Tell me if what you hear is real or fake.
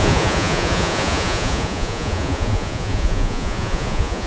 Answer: fake